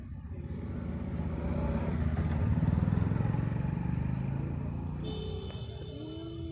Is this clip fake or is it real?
real